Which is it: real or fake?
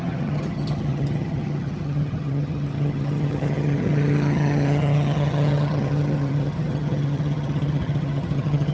fake